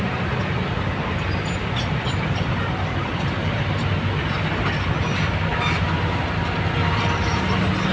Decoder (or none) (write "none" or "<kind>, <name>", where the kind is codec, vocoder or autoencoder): none